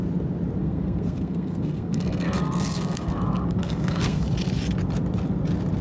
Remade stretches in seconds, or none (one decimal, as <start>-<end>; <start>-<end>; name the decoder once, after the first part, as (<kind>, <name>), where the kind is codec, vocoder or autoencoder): 0.6-3.2 (codec, SNAC); 3.6-4.2